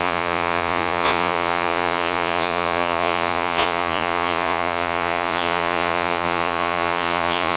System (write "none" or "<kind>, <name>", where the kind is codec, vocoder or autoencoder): vocoder, Vocos